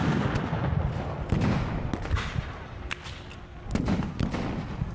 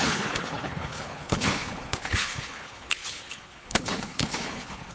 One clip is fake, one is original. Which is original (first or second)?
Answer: first